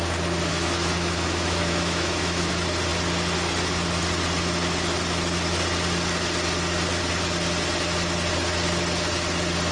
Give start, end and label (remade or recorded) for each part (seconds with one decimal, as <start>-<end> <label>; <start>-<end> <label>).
0.0-0.5 recorded; 0.5-2.5 remade; 2.5-9.7 recorded